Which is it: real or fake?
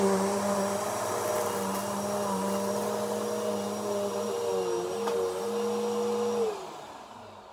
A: real